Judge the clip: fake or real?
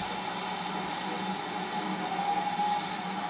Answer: real